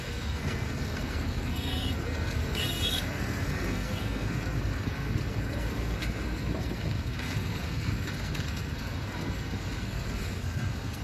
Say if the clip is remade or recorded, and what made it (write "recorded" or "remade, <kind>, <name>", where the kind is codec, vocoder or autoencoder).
remade, codec, SNAC